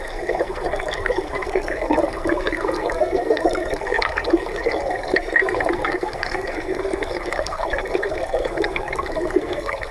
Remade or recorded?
remade